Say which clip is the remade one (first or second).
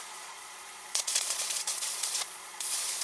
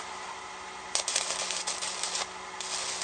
first